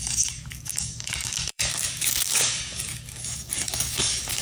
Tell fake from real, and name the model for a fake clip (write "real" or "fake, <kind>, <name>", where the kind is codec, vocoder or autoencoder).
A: fake, codec, DAC